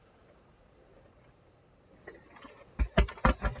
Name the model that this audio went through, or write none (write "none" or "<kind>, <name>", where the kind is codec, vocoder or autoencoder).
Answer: none